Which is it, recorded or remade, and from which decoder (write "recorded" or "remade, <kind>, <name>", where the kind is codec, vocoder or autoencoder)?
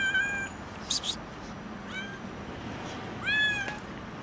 recorded